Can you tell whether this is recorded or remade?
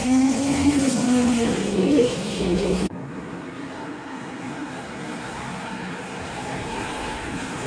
remade